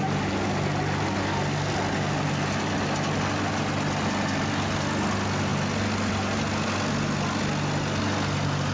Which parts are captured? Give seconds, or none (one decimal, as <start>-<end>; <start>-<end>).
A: 0.0-8.7